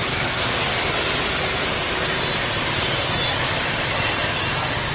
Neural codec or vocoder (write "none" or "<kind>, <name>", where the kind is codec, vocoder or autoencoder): none